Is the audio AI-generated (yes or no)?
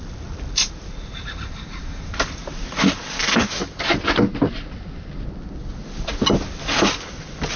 no